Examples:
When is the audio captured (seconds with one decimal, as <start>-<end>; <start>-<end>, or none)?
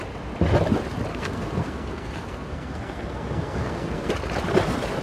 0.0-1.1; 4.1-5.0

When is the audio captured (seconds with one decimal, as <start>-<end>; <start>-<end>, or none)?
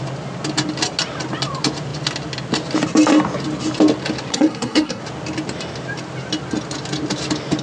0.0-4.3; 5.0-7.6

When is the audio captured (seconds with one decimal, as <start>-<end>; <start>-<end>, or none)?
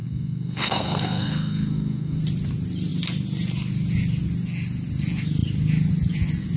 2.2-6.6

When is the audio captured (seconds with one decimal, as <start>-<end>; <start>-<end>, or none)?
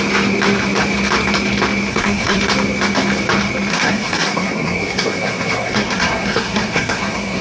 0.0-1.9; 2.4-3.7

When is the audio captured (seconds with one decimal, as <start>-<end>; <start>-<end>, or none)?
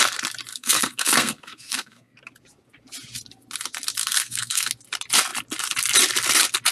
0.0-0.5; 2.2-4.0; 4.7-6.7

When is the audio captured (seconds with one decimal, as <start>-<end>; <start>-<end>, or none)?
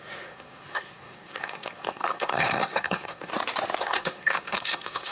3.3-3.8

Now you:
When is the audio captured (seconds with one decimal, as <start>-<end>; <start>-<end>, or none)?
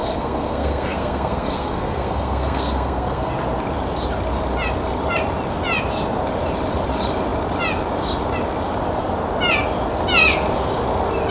3.3-11.3